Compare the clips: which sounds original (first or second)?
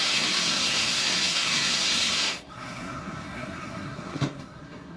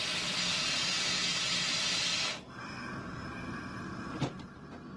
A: second